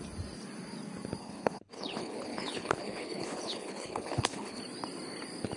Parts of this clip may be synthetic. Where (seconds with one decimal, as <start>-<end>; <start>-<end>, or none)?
1.2-4.6